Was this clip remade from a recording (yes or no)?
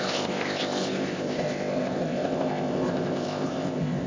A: yes